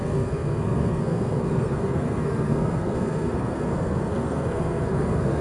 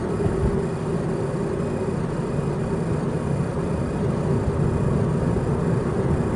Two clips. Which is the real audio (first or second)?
second